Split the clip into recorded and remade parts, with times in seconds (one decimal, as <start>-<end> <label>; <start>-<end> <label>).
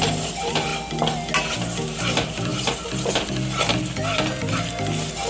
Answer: 0.0-0.7 remade; 0.7-1.4 recorded; 1.4-2.5 remade; 2.5-5.3 recorded